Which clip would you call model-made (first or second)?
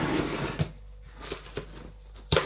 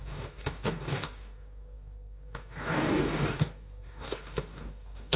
second